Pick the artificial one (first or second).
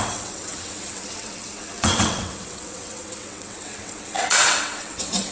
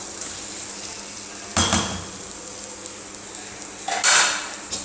first